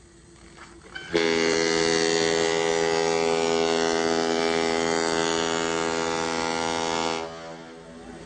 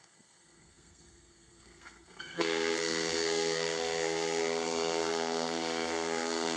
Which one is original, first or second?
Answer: first